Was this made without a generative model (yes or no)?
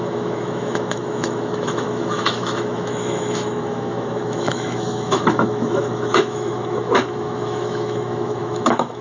no